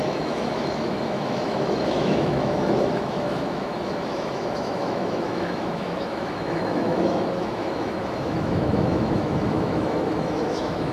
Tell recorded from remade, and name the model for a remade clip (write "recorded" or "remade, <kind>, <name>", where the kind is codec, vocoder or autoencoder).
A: remade, autoencoder, DAC-VAE